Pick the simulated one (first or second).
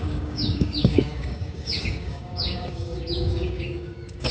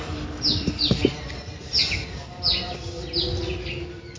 first